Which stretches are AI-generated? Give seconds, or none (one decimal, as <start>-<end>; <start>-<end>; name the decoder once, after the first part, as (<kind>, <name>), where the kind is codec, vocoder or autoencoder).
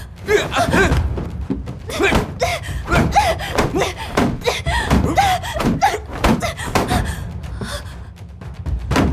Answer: 0.0-9.1 (vocoder, BigVGAN v2)